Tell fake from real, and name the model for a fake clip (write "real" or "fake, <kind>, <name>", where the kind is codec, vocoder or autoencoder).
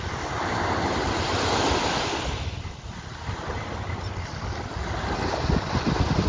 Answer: real